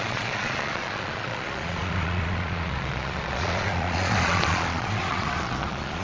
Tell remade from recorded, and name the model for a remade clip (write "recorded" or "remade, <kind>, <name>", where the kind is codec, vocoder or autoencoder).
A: remade, vocoder, Vocos